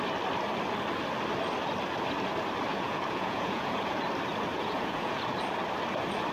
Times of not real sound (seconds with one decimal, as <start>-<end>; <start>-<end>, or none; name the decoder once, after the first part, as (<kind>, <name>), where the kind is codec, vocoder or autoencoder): 2.7-4.0 (vocoder, Vocos); 4.5-5.2